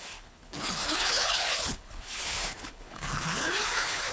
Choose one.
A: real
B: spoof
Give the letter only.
B